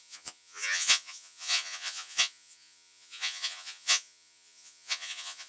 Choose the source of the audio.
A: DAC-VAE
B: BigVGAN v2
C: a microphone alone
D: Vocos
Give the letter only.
D